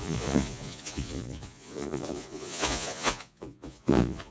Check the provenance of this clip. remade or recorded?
remade